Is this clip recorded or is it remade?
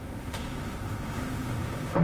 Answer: remade